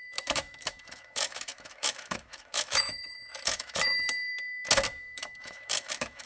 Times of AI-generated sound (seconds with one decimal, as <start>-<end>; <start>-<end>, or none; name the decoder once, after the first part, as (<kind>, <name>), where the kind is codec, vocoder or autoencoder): 0.0-4.3 (autoencoder, DAC-VAE); 5.0-6.3